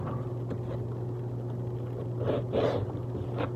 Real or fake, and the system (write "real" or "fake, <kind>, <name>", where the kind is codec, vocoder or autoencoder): real